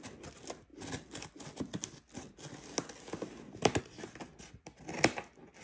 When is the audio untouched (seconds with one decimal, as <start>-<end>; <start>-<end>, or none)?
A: 0.0-5.6